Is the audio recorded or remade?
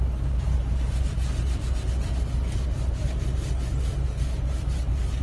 recorded